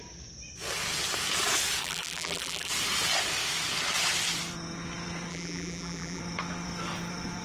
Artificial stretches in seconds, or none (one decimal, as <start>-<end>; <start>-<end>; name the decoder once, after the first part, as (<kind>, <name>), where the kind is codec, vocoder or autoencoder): 1.8-2.7 (vocoder, BigVGAN v2); 5.3-6.2